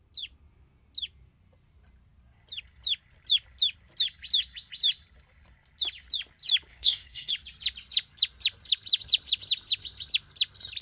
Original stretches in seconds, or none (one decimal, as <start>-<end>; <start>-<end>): 0.0-6.7; 7.3-10.8